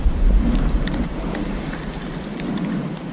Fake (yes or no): yes